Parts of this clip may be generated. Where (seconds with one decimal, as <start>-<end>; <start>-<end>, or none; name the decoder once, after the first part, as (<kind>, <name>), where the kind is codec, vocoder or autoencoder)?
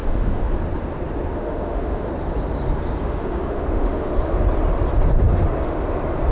0.0-0.5 (autoencoder, DAC-VAE); 1.3-2.1; 3.0-4.1